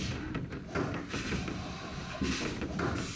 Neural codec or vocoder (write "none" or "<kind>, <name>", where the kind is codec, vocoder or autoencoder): vocoder, BigVGAN v2